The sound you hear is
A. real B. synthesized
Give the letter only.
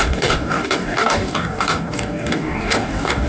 B